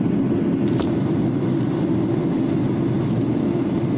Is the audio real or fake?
real